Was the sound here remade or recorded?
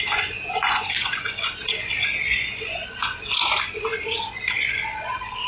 remade